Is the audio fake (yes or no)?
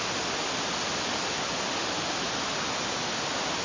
no